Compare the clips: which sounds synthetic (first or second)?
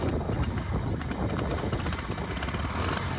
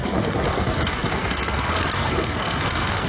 second